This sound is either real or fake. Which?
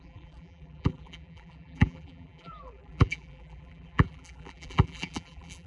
fake